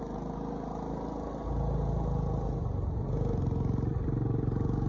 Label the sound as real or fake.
real